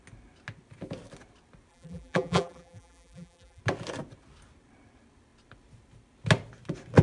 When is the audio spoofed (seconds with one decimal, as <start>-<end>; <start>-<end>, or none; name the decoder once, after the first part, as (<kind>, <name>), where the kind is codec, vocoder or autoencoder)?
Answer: 1.7-3.6 (vocoder, BigVGAN v2)